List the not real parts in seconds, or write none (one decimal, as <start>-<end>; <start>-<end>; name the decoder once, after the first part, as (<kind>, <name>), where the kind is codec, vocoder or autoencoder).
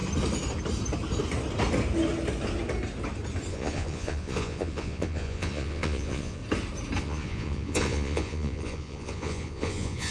3.5-6.4 (vocoder, Vocos); 7.0-10.1